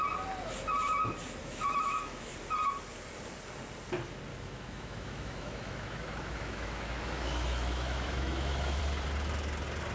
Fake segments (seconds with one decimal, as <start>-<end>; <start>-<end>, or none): 1.4-2.3; 4.3-8.8